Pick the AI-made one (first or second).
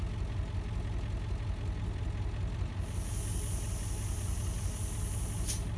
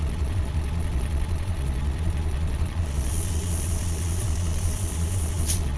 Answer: second